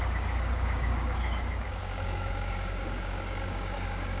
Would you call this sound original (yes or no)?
no